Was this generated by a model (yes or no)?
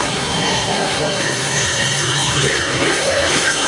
yes